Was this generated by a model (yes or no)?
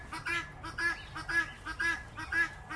no